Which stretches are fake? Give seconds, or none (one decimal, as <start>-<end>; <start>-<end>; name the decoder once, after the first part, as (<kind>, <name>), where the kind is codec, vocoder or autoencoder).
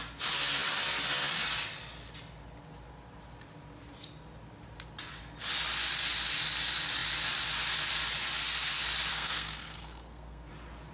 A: 9.1-10.5 (codec, SNAC)